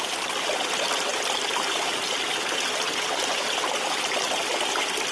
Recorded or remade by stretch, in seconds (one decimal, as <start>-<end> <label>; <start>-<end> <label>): 0.0-5.1 recorded